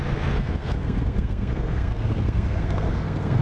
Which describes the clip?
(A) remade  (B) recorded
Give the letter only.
A